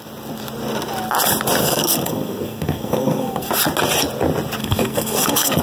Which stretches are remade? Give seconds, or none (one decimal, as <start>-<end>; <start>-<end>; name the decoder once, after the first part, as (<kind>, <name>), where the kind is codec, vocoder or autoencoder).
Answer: 1.6-3.5 (codec, SNAC); 4.6-5.6